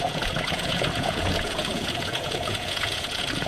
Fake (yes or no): yes